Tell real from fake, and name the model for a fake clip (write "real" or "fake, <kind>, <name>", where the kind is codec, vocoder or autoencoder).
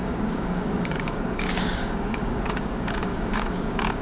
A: fake, codec, DAC